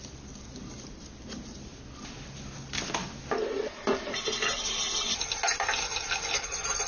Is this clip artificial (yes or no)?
no